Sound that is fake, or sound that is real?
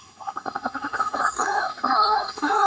fake